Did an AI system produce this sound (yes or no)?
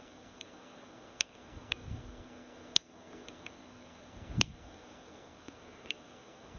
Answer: yes